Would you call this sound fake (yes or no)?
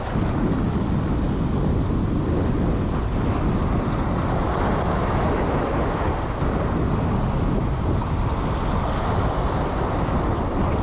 no